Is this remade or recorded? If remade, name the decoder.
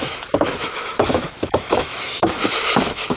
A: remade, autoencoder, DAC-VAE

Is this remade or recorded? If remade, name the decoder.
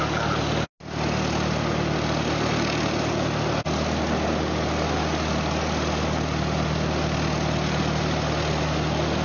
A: recorded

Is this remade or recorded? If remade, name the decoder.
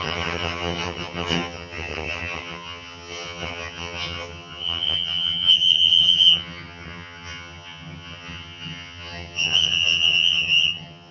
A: remade, vocoder, HiFi-GAN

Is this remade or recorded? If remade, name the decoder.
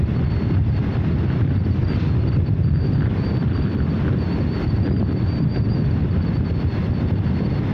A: recorded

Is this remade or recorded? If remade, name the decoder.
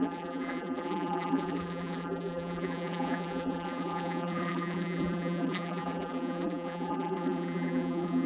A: remade, vocoder, BigVGAN v2